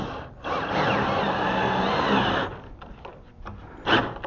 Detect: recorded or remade recorded